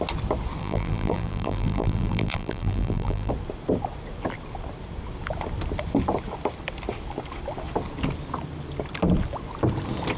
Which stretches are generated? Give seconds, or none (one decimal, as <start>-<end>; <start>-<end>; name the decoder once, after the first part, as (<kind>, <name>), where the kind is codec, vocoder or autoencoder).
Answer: 0.6-3.3 (vocoder, BigVGAN v2)